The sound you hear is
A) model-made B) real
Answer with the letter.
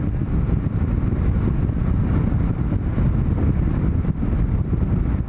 B